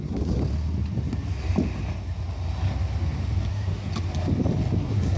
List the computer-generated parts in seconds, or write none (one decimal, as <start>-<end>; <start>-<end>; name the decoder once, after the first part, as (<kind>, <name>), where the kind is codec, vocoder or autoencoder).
0.0-0.4 (codec, SNAC); 3.5-3.9; 4.8-5.2

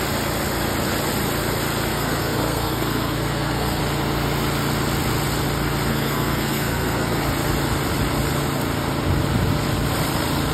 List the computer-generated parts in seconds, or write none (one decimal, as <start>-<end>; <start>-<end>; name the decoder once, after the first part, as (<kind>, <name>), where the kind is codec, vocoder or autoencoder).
1.9-3.8 (codec, SNAC); 5.9-7.2

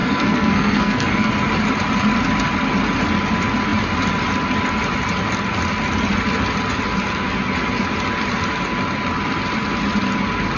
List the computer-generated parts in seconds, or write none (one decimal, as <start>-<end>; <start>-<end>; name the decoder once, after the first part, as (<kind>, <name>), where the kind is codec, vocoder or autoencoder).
0.0-1.3 (codec, SNAC)

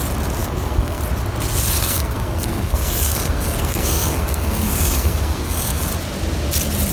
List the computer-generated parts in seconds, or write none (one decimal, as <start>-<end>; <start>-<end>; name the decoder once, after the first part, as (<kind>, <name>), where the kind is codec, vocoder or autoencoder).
0.4-1.0 (codec, SNAC); 1.8-5.9

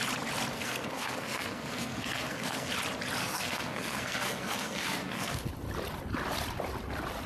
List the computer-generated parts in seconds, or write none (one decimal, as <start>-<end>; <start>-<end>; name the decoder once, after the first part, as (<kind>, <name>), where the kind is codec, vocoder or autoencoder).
0.5-2.7 (codec, SNAC); 3.2-5.5

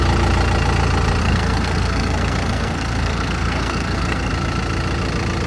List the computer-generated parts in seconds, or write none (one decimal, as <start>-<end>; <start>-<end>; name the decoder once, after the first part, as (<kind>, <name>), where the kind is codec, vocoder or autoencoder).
1.2-4.3 (codec, SNAC)